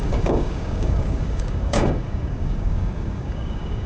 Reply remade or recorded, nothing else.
remade